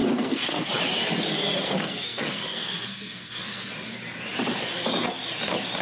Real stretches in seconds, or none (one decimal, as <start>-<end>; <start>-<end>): 0.7-1.6; 3.7-5.8